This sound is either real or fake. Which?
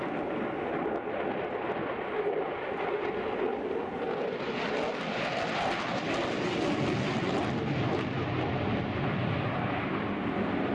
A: real